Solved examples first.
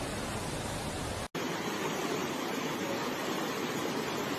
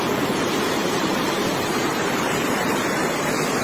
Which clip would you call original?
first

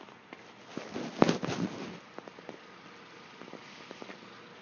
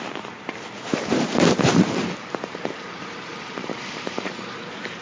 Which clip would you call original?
first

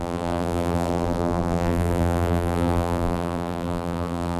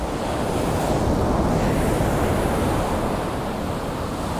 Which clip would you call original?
second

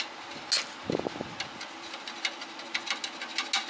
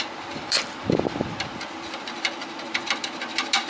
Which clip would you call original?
first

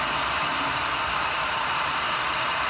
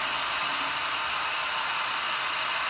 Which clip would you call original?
second